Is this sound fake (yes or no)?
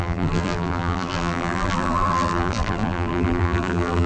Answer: yes